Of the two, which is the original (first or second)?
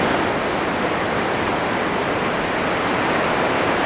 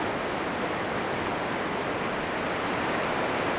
second